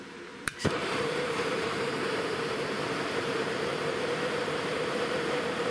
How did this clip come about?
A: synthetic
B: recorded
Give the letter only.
A